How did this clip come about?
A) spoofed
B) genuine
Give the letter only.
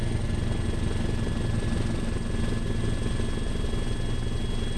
B